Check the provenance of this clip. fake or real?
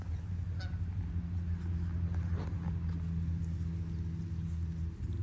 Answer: real